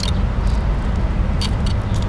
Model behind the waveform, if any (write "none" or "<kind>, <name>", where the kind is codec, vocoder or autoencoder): none